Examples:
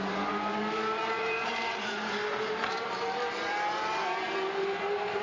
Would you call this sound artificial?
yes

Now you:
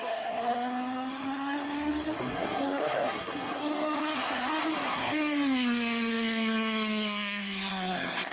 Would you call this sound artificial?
yes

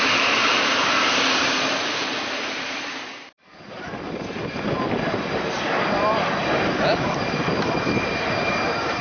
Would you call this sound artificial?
yes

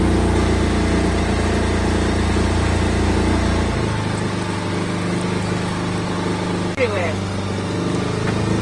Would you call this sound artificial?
no